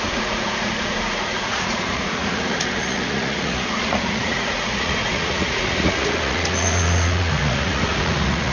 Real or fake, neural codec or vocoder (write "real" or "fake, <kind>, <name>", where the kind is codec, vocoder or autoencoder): fake, vocoder, Vocos